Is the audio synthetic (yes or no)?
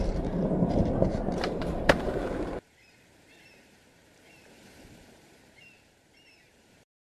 yes